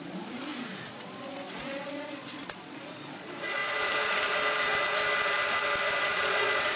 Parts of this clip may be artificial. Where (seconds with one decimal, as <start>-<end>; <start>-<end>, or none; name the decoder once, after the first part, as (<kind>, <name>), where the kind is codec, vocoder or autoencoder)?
0.0-3.6 (vocoder, Vocos); 6.0-6.8